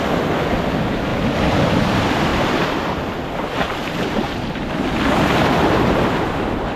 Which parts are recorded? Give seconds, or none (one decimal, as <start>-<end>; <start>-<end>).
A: 0.0-1.1; 1.8-2.3; 3.3-6.8